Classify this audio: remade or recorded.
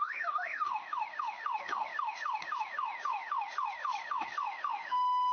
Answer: remade